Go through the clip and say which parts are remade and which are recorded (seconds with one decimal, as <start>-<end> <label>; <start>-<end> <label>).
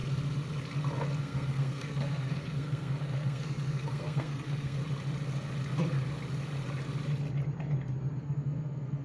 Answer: 0.0-1.2 recorded; 1.2-4.8 remade; 4.8-8.2 recorded; 8.2-9.0 remade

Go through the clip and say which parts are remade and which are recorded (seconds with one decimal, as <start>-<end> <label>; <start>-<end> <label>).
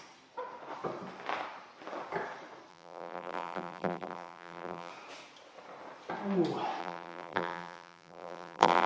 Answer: 0.0-2.7 recorded; 2.7-4.9 remade; 4.9-6.8 recorded; 6.8-8.9 remade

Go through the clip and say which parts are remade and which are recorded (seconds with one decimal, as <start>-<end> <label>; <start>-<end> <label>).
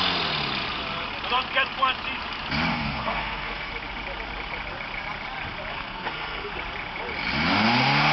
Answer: 0.0-2.7 recorded; 2.7-3.7 remade; 3.7-5.7 recorded; 5.7-6.5 remade; 6.5-8.1 recorded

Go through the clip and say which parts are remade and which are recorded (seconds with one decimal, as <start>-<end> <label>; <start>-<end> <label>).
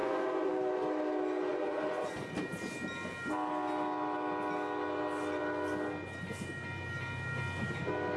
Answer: 0.0-0.5 remade; 0.5-1.5 recorded; 1.5-2.1 remade; 2.1-8.2 recorded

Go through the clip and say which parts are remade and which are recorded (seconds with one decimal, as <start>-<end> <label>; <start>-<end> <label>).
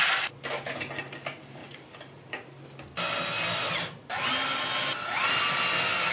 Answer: 0.0-6.1 recorded